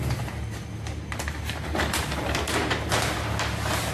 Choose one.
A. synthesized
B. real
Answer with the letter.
B